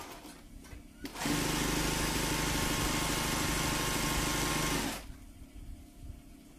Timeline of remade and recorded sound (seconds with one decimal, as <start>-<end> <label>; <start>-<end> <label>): 0.0-6.6 recorded

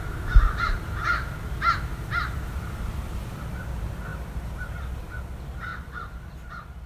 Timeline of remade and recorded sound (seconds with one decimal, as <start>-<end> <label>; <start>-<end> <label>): 0.0-4.1 recorded; 4.1-4.7 remade; 4.7-5.7 recorded; 5.7-6.5 remade; 6.5-6.9 recorded

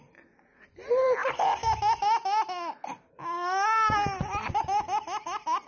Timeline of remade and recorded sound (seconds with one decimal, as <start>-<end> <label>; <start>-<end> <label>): 0.0-5.7 recorded

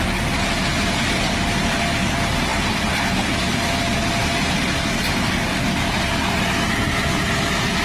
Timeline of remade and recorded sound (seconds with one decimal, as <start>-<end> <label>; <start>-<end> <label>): 0.0-7.8 recorded